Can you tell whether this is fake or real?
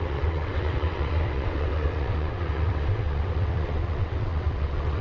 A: fake